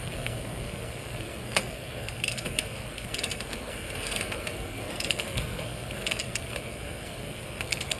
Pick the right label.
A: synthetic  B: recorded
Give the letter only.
A